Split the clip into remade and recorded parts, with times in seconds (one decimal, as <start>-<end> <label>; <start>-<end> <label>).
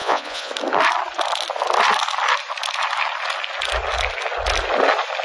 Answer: 0.0-0.5 remade; 0.5-5.2 recorded